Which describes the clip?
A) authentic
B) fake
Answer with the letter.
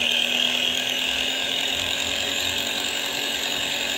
B